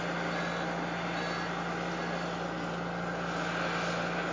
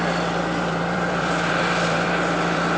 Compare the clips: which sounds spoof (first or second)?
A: second